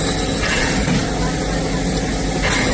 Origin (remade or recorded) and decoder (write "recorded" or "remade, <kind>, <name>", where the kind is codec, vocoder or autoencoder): recorded